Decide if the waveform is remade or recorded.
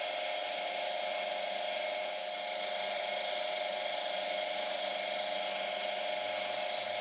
recorded